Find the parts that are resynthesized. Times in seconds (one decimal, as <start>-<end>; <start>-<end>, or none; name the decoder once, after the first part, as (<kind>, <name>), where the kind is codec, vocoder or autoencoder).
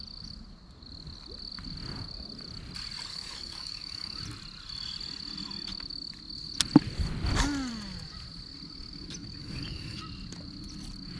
3.1-4.2 (codec, DAC); 9.4-10.0